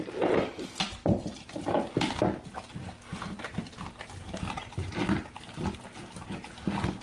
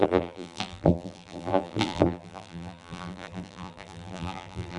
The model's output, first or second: second